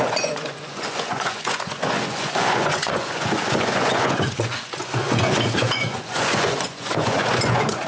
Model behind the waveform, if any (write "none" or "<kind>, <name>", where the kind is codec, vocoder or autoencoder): vocoder, Vocos